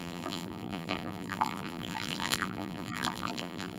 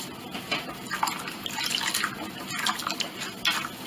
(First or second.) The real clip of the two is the second